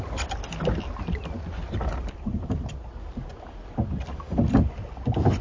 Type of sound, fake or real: real